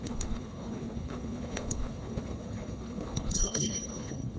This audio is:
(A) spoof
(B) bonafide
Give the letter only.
A